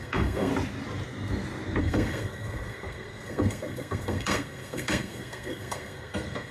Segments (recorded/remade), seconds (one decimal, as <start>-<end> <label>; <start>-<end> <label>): 0.0-0.5 remade; 0.5-1.8 recorded; 1.8-6.5 remade